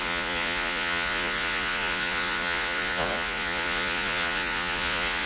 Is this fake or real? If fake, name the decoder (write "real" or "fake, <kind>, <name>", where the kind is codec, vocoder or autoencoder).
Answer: fake, vocoder, Vocos